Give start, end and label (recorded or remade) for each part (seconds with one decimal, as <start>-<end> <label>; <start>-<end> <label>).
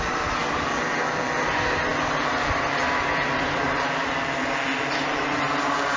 0.0-6.0 recorded